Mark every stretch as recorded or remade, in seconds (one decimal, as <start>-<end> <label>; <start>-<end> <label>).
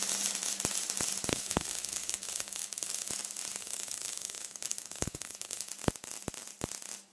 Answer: 0.0-1.3 recorded; 1.3-3.1 remade; 3.1-3.6 recorded; 3.6-5.7 remade; 5.7-7.1 recorded